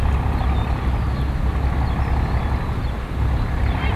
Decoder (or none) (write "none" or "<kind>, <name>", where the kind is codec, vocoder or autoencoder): none